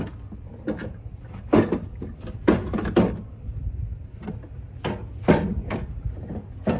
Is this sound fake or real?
fake